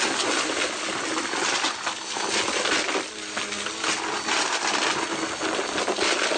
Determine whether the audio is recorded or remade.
recorded